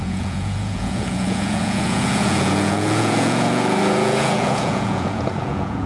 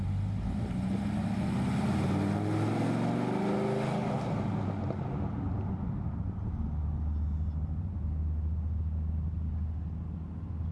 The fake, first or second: first